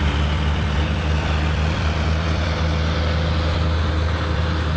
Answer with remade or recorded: remade